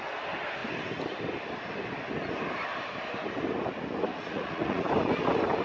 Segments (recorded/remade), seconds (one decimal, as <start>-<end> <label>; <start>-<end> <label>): 0.0-4.1 recorded; 4.1-4.9 remade; 4.9-5.6 recorded